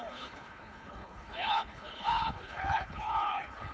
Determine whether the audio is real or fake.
fake